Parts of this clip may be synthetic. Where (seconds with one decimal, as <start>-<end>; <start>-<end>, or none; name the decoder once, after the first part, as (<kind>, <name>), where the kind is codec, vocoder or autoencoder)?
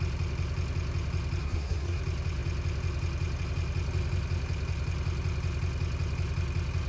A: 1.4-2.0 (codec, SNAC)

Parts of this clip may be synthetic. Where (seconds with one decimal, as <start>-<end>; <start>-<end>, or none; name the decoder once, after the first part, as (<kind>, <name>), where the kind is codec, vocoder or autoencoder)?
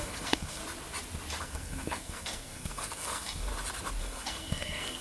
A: 0.0-0.6 (codec, SNAC); 1.4-3.5; 4.0-5.0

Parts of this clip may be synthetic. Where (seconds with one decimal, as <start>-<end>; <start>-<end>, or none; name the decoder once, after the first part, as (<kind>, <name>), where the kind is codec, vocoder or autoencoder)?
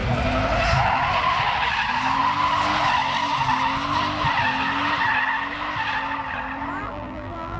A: 6.8-7.6 (vocoder, BigVGAN v2)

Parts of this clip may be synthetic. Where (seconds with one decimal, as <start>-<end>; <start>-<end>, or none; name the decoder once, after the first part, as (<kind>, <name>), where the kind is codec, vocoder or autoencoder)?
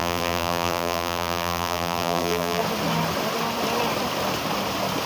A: 0.0-2.6 (vocoder, BigVGAN v2)